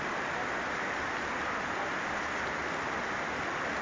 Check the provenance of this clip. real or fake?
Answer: real